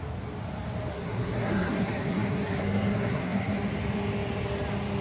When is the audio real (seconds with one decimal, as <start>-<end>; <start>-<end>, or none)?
0.0-0.9; 3.6-5.0